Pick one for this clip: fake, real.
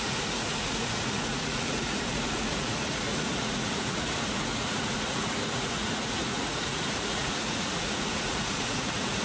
fake